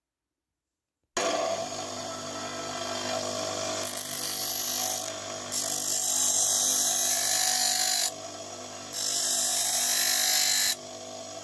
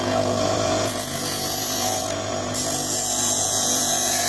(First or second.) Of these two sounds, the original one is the first